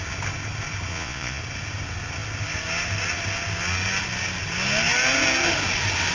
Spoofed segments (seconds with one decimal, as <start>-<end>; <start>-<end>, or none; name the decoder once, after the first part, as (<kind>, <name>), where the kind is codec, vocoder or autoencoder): 0.9-1.4 (vocoder, Vocos)